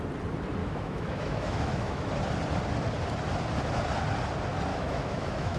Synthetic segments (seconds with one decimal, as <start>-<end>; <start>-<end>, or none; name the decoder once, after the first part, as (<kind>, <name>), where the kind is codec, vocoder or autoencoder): 0.6-2.1 (autoencoder, DAC-VAE); 4.7-5.6